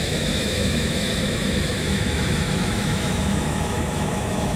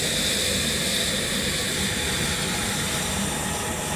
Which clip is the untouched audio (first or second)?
second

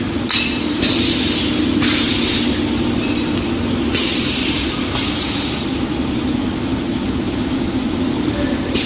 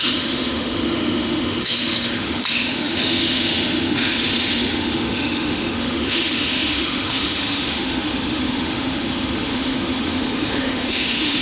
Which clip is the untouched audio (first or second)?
first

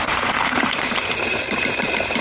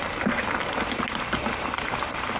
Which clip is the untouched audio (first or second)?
second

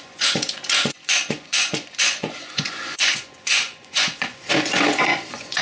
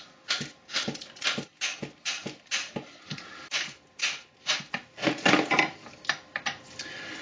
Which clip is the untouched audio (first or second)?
second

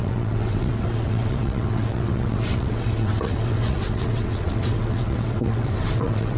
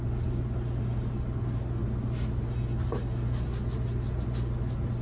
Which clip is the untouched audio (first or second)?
second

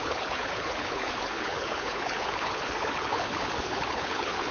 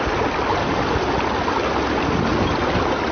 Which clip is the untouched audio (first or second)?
second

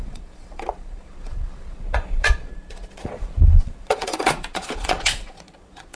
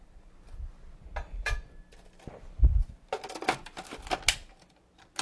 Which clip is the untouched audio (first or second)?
second